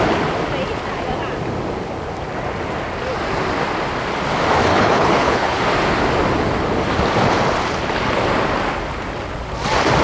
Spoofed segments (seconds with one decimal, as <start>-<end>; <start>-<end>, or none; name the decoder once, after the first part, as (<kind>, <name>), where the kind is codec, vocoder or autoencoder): 4.7-5.6 (codec, HILCodec)